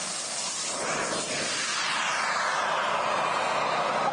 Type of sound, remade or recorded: recorded